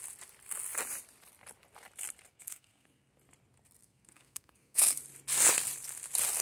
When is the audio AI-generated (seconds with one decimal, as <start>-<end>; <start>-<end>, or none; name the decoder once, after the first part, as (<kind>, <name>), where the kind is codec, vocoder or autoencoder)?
2.3-3.1 (codec, SNAC); 3.8-5.0